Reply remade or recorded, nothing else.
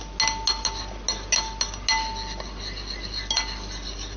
recorded